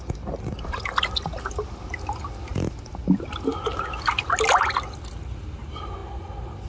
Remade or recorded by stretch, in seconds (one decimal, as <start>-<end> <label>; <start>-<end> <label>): 0.0-6.7 recorded